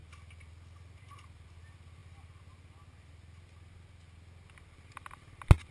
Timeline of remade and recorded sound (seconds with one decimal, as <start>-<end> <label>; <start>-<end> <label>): 0.0-5.7 recorded